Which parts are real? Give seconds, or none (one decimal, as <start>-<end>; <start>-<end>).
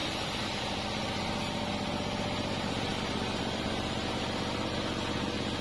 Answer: 0.6-2.9; 4.1-5.6